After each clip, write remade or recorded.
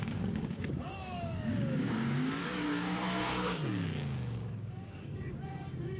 remade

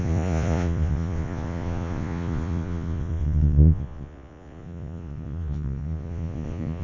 remade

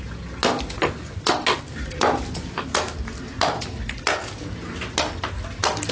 recorded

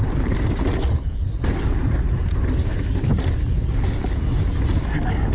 recorded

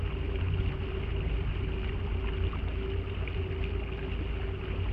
recorded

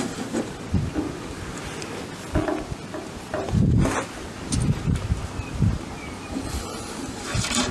recorded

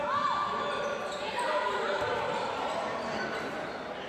recorded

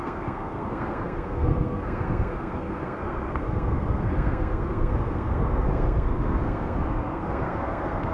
remade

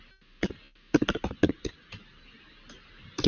recorded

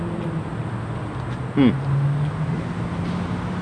recorded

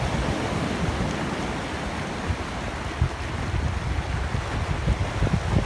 recorded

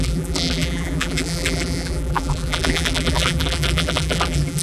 remade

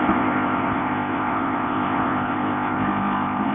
remade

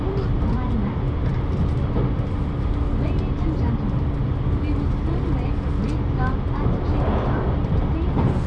recorded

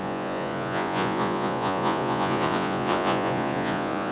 remade